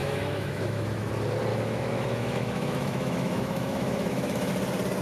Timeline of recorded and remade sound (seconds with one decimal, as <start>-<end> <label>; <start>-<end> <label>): 0.0-1.1 remade; 1.1-1.5 recorded; 1.5-4.5 remade; 4.5-5.0 recorded